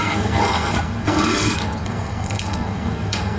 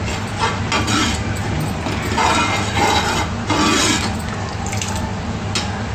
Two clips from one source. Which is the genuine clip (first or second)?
second